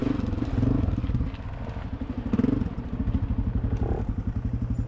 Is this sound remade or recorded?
recorded